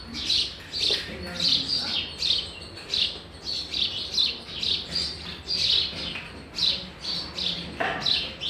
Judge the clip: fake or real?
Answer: real